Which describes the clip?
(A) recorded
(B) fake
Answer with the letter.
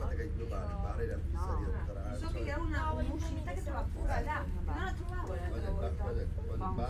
B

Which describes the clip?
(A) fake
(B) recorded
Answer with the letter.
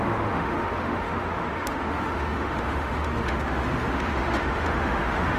A